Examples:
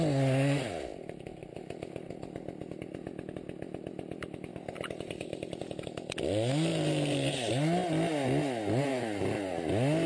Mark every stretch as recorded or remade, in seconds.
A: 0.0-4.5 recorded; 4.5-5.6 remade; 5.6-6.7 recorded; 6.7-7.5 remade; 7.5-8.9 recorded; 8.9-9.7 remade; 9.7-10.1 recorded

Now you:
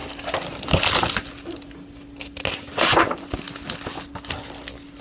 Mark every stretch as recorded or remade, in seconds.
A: 0.0-5.0 recorded

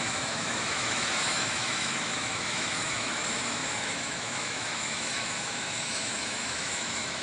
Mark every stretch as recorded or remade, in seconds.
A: 0.0-7.2 remade

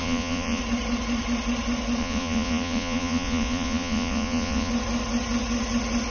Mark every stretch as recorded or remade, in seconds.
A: 0.0-0.6 remade; 0.6-2.0 recorded; 2.0-4.7 remade; 4.7-6.1 recorded

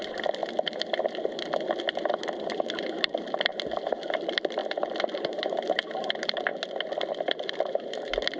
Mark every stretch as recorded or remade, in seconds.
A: 0.0-0.4 remade; 0.4-2.1 recorded; 2.1-4.6 remade; 4.6-5.2 recorded; 5.2-6.5 remade; 6.5-7.1 recorded; 7.1-8.4 remade

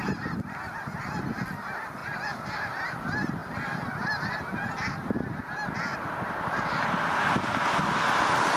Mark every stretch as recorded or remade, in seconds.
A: 0.0-2.0 recorded; 2.0-2.7 remade; 2.7-8.6 recorded

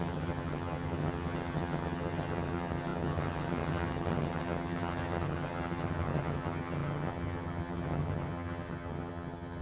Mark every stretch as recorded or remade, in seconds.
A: 0.0-9.6 remade

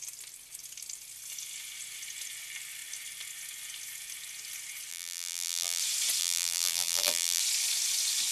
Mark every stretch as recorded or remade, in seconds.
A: 0.0-4.9 recorded; 4.9-5.8 remade; 5.8-6.2 recorded; 6.2-7.4 remade; 7.4-8.3 recorded